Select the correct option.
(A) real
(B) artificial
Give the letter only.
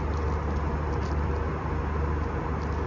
A